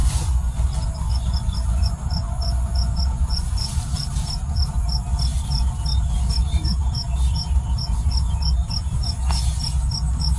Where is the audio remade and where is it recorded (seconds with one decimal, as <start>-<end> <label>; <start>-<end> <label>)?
0.0-0.6 remade; 0.6-1.1 recorded; 1.1-3.8 remade; 3.8-10.4 recorded